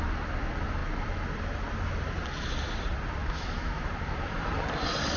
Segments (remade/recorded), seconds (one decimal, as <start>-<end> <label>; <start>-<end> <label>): 0.0-3.2 recorded; 3.2-3.9 remade; 3.9-5.2 recorded